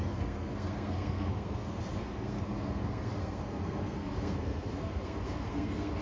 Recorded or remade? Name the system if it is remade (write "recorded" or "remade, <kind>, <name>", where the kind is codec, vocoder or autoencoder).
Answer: remade, codec, SNAC